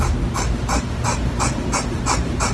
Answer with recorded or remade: recorded